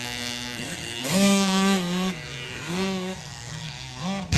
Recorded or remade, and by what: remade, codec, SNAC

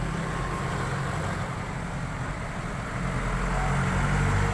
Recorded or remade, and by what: recorded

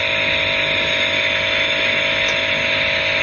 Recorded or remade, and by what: recorded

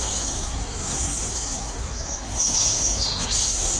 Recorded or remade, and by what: remade, codec, SNAC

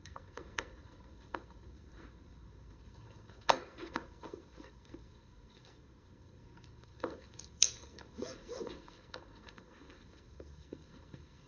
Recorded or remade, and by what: remade, codec, SNAC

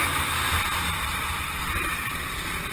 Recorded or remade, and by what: recorded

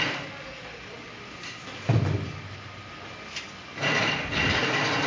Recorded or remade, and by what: recorded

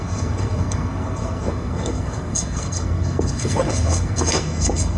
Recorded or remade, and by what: remade, codec, SNAC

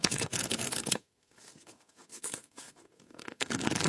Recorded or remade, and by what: remade, codec, SNAC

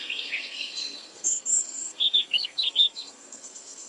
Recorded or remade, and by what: remade, codec, SNAC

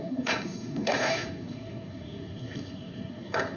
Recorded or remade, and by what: remade, codec, SNAC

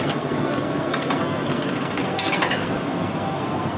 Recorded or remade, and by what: remade, codec, SNAC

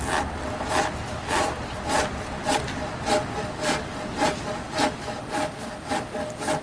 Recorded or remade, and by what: recorded